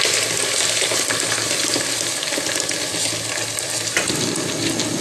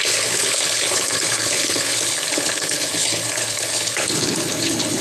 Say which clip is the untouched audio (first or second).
first